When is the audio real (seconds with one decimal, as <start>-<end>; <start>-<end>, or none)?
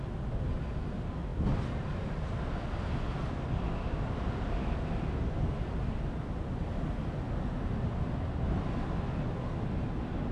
0.0-10.3